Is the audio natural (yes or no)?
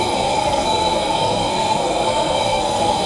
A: no